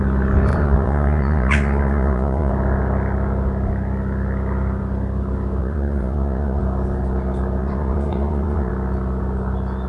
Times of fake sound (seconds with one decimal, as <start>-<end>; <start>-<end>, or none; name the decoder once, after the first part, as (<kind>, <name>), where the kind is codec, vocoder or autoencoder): 0.5-2.5 (vocoder, Vocos); 5.6-6.6; 7.6-8.7